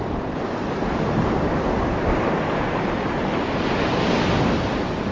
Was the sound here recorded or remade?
recorded